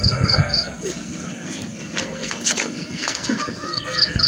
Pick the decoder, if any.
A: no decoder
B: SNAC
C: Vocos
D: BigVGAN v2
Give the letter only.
B